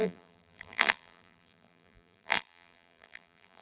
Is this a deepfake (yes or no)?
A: yes